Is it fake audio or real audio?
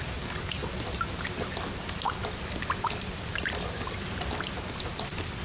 real